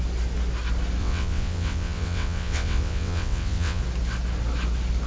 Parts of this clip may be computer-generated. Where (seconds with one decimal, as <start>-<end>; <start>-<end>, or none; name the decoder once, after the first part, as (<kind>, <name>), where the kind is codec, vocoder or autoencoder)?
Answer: 1.0-3.8 (vocoder, WaveNeXt)